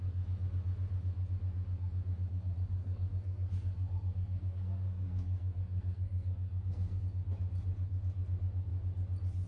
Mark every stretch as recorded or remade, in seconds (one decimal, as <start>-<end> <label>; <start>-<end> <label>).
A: 0.0-2.8 recorded; 2.8-7.0 remade; 7.0-9.5 recorded